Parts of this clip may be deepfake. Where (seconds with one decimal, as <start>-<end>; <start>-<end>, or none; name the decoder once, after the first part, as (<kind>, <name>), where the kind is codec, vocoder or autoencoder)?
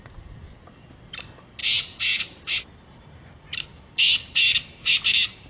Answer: 1.6-2.4 (vocoder, Vocos)